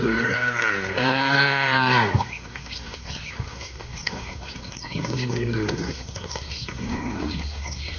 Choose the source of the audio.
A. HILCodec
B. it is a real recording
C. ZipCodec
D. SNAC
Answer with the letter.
D